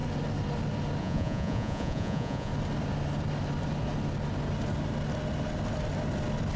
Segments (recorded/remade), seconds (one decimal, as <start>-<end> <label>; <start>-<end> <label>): 0.0-1.0 recorded; 1.0-2.5 remade; 2.5-6.6 recorded